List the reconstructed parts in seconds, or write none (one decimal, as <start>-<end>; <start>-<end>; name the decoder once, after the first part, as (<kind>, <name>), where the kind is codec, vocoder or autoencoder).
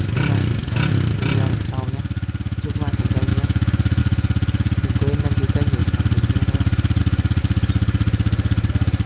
3.3-4.0 (autoencoder, DAC-VAE)